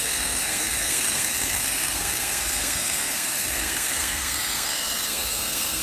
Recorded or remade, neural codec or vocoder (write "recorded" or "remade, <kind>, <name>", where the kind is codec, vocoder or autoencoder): remade, codec, SNAC